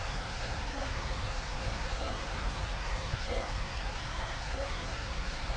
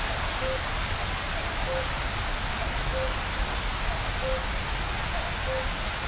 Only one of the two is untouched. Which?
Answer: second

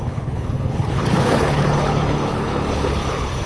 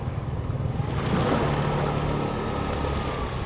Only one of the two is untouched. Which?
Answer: second